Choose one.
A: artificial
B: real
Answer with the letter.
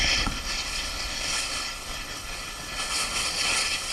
A